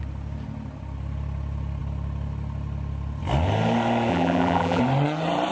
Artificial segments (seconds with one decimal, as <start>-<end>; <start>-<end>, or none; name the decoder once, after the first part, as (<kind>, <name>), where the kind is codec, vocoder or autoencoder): 4.1-4.8 (vocoder, BigVGAN v2)